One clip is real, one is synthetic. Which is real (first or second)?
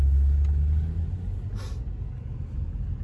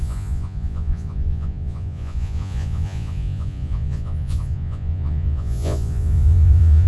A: first